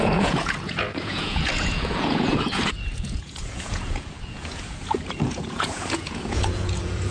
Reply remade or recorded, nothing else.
remade